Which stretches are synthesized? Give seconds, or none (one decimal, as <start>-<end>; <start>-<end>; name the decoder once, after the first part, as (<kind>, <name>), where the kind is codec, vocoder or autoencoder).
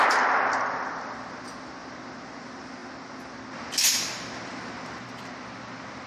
none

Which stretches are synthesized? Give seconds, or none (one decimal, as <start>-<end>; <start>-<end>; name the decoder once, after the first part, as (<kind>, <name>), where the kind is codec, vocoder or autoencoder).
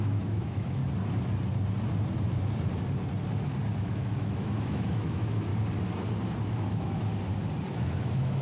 0.0-0.8 (autoencoder, DAC-VAE); 3.8-5.5; 6.4-7.1; 7.7-8.4